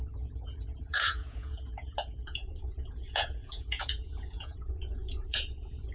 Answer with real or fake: fake